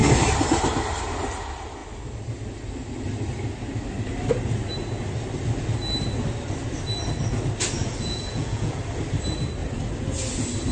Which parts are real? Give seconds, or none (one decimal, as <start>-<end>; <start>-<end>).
0.0-7.8; 8.8-10.7